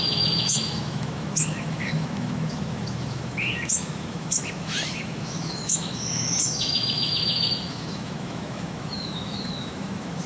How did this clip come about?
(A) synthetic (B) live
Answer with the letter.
A